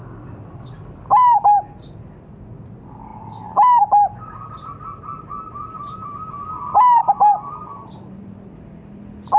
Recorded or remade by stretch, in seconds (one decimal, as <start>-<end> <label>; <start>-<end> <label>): 0.0-7.0 recorded; 7.0-9.4 remade